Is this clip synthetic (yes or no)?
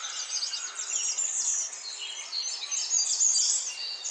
no